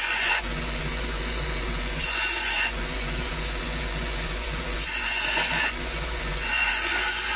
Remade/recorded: remade